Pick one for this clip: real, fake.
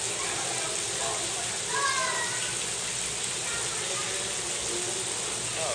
real